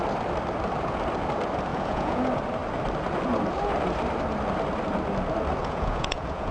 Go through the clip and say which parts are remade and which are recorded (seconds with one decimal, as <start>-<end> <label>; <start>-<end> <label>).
0.0-1.7 recorded; 1.7-2.2 remade; 2.2-5.6 recorded; 5.6-6.5 remade